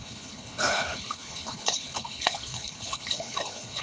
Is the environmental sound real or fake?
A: fake